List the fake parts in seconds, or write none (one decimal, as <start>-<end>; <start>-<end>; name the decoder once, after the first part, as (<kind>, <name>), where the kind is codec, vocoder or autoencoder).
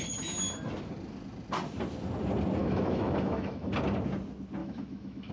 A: 2.6-3.7 (autoencoder, DAC-VAE); 4.6-5.3